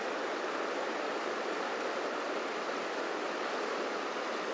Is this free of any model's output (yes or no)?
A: yes